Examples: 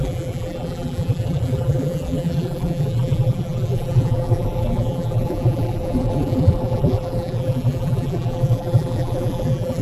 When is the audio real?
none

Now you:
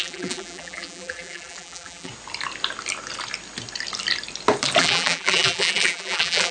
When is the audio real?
2.1-4.8

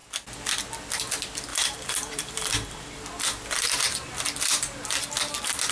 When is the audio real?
0.0-1.5; 3.0-5.7